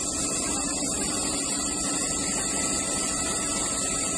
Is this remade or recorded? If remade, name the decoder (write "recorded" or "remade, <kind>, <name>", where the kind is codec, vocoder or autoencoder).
recorded